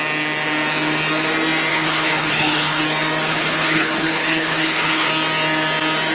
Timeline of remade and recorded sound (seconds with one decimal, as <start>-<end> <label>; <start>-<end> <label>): 0.0-1.7 recorded; 1.7-2.8 remade; 2.8-3.3 recorded; 3.3-5.1 remade; 5.1-6.1 recorded